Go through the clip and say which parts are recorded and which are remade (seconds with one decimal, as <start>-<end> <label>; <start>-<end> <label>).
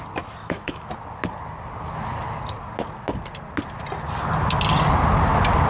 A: 0.0-0.4 recorded; 0.4-0.9 remade; 0.9-5.7 recorded